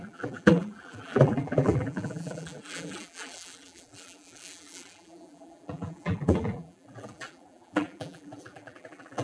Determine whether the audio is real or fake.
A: fake